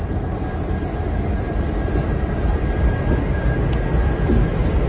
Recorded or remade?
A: remade